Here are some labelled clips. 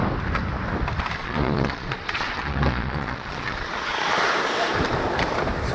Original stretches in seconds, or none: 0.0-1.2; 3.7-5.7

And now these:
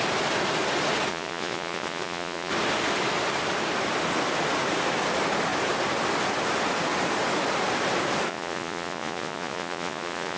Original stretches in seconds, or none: 0.0-1.1; 2.5-8.3

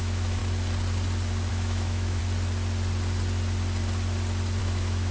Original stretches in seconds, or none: 0.4-1.5; 2.2-4.6

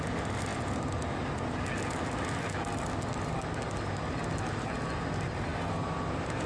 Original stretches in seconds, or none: 0.0-6.5

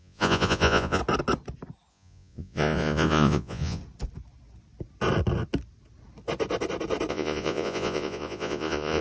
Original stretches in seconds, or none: 1.0-1.9; 3.8-7.1

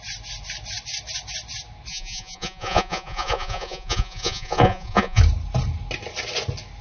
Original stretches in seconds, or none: 0.0-1.9; 5.2-6.8

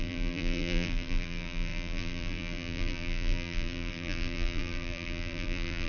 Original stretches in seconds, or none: none